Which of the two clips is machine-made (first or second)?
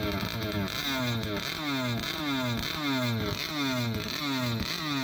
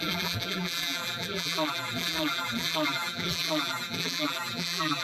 second